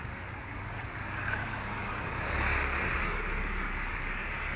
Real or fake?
fake